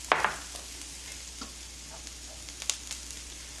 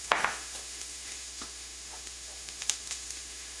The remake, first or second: second